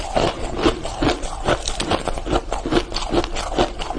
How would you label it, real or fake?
real